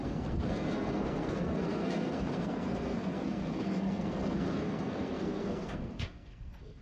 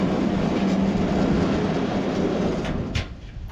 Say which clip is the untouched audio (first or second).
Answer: second